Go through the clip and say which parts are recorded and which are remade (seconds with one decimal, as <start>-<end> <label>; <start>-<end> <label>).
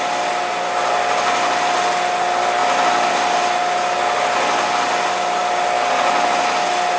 0.0-7.0 recorded